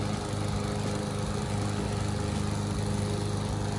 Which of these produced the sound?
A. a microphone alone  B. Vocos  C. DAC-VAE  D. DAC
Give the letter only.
A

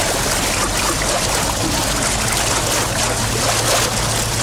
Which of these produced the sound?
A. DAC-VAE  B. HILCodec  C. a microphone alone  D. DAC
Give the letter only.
C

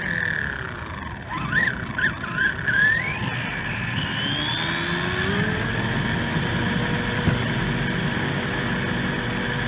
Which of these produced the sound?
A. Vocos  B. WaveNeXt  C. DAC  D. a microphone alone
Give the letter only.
D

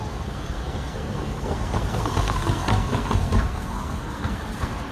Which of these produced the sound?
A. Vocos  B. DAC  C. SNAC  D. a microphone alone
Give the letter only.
C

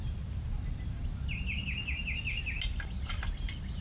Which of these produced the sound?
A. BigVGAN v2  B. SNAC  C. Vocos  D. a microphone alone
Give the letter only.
D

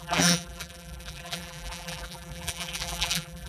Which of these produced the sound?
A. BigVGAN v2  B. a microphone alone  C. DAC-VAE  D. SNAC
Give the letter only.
A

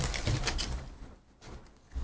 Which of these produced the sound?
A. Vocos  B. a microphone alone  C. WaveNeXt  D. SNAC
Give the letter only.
B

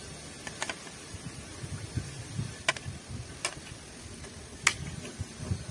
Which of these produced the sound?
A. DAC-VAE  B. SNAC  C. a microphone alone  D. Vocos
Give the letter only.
C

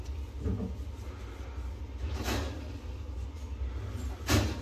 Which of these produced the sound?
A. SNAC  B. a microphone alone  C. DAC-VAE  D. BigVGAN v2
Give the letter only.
B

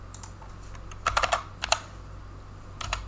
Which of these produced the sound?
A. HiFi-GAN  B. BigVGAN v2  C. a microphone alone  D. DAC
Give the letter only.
C